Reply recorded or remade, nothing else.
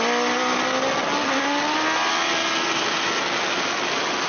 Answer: recorded